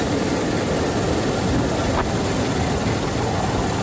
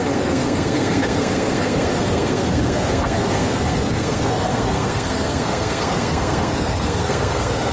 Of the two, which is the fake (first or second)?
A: second